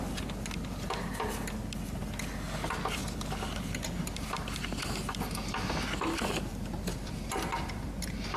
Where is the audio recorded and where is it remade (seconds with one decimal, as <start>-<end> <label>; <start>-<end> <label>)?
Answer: 0.0-6.9 recorded; 6.9-7.9 remade; 7.9-8.4 recorded

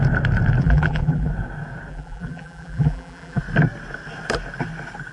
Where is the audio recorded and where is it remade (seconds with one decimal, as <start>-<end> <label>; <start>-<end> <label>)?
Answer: 0.0-0.6 recorded; 0.6-1.3 remade; 1.3-1.9 recorded; 1.9-3.4 remade; 3.4-5.1 recorded

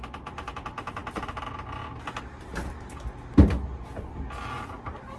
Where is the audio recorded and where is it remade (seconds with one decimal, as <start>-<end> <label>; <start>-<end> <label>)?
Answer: 0.0-5.2 recorded

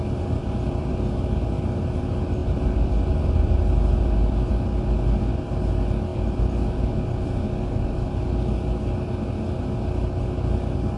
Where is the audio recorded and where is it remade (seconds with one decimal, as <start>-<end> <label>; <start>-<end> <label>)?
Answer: 0.0-0.4 recorded; 0.4-1.1 remade; 1.1-2.4 recorded; 2.4-4.5 remade; 4.5-11.0 recorded

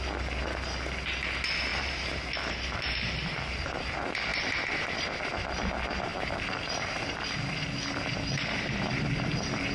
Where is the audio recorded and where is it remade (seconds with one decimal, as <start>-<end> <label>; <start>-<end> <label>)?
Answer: 0.0-1.7 recorded; 1.7-3.5 remade; 3.5-6.1 recorded; 6.1-7.3 remade; 7.3-9.7 recorded

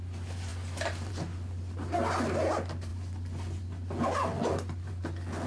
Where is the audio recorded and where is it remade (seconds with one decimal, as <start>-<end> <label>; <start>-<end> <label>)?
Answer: 0.0-5.5 recorded